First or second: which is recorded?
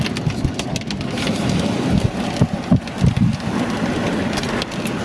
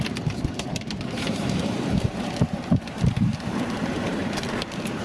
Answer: first